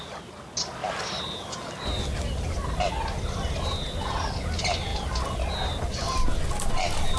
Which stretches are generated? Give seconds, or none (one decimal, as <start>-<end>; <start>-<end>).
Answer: none